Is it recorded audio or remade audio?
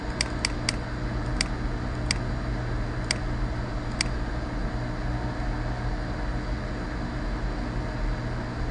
recorded